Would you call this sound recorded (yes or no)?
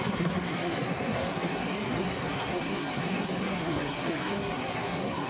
no